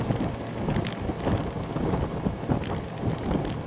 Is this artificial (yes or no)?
no